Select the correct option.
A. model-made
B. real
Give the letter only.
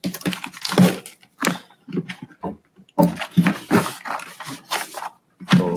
B